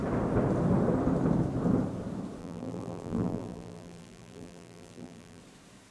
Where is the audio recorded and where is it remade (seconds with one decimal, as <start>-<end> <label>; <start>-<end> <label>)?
0.0-2.4 recorded; 2.4-5.4 remade; 5.4-5.9 recorded